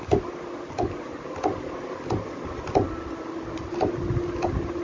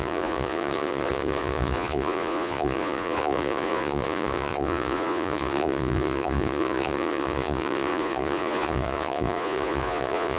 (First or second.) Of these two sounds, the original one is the first